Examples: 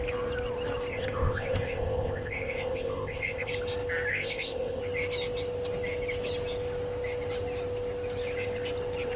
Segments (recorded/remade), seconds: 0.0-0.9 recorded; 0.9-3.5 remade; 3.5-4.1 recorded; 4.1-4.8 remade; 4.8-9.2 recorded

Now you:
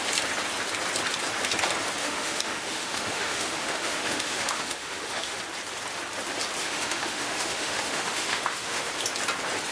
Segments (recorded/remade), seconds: 0.0-2.0 recorded; 2.0-5.4 remade; 5.4-6.6 recorded; 6.6-8.9 remade; 8.9-9.7 recorded

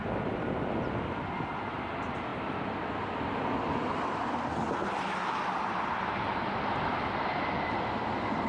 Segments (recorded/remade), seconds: 0.0-8.5 recorded